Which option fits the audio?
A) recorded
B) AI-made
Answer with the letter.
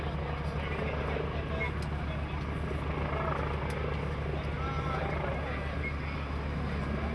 A